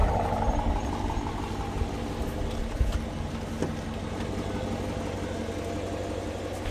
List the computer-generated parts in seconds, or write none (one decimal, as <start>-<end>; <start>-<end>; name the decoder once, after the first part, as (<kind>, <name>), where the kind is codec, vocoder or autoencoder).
none

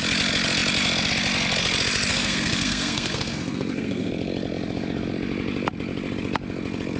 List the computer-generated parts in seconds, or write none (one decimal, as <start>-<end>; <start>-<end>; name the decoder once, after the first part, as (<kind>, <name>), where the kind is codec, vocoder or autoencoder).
2.1-4.1 (codec, SNAC)

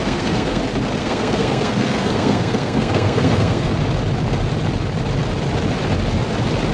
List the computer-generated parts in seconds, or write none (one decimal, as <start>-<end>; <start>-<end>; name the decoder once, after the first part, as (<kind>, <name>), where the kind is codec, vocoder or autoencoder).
0.0-0.6 (codec, SNAC); 1.0-3.7

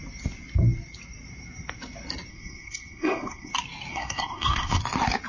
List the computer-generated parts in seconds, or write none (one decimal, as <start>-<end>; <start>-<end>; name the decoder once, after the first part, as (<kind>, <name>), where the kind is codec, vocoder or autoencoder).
2.3-3.5 (codec, SNAC); 3.9-4.8

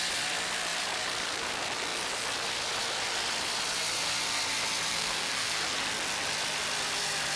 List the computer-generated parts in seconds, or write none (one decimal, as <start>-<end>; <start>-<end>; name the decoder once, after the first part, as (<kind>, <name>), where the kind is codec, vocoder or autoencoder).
4.9-5.7 (codec, SNAC)

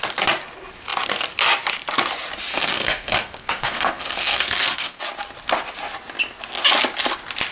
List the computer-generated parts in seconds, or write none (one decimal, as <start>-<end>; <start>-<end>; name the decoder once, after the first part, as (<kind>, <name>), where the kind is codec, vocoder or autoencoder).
2.5-5.0 (codec, SNAC)

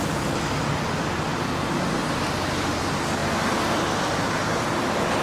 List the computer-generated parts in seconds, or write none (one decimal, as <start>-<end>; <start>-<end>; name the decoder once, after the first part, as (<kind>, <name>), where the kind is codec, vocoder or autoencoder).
none